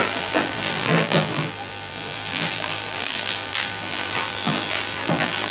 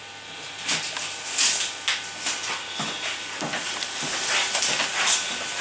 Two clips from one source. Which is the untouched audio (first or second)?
second